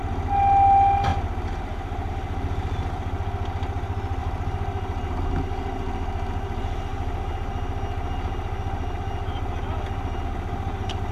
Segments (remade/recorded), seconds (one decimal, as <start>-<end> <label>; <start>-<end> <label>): 0.0-11.1 recorded